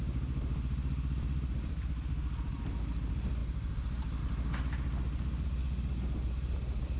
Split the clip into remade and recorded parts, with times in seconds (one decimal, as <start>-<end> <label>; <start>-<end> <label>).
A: 0.0-7.0 recorded